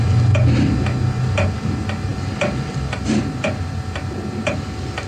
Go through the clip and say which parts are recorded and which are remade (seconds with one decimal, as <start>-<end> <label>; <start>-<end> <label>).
0.0-5.1 recorded